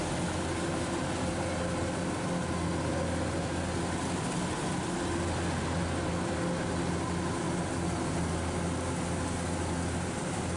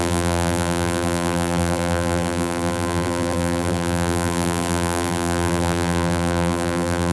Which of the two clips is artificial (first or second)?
second